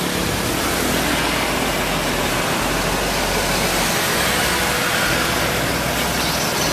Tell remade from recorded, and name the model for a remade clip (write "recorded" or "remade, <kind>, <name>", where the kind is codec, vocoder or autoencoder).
recorded